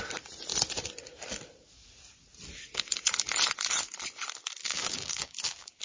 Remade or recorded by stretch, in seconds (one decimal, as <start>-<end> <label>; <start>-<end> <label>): 0.0-4.6 recorded; 4.6-5.8 remade